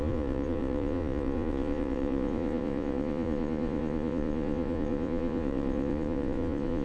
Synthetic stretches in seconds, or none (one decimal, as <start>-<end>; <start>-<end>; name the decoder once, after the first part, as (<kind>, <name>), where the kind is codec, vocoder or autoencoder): 0.0-6.8 (vocoder, Vocos)